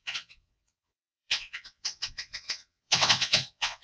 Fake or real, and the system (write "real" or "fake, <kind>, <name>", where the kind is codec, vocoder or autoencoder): fake, vocoder, WaveNeXt